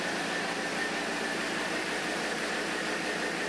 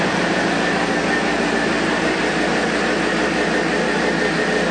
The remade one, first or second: first